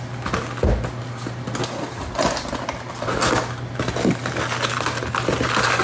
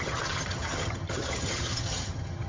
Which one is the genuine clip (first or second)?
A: first